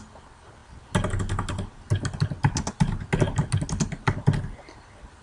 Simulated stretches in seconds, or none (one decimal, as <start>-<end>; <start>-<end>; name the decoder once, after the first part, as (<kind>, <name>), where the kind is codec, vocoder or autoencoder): none